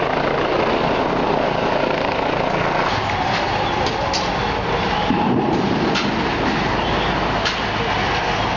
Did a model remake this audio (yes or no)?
no